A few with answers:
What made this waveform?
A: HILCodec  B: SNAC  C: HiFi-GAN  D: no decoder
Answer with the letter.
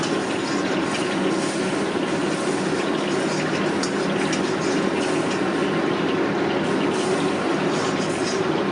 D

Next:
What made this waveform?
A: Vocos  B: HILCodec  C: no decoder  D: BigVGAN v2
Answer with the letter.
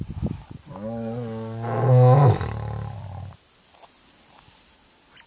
C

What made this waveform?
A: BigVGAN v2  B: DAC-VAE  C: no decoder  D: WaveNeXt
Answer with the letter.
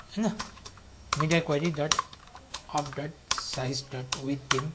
B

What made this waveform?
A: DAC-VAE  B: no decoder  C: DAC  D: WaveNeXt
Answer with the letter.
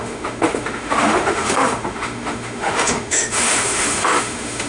A